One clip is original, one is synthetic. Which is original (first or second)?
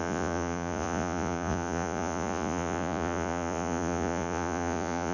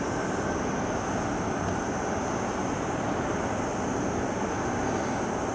second